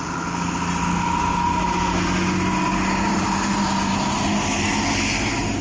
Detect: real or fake real